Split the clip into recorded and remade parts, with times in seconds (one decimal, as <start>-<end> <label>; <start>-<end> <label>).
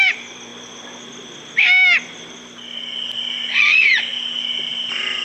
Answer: 0.0-0.5 remade; 0.5-3.6 recorded; 3.6-4.1 remade; 4.1-4.7 recorded; 4.7-5.2 remade